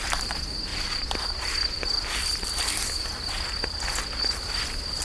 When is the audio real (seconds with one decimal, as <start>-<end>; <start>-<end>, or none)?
0.0-5.0